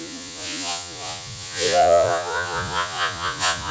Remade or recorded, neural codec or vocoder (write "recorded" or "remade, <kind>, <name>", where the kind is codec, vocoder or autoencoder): remade, vocoder, Vocos